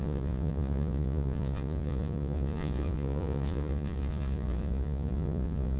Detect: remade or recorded remade